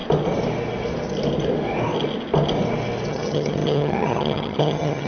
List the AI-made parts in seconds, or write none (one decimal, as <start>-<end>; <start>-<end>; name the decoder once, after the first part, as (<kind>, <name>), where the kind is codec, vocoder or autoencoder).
3.1-5.1 (vocoder, HiFi-GAN)